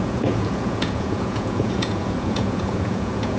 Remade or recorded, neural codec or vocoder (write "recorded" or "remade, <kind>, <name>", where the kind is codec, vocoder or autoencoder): remade, vocoder, Vocos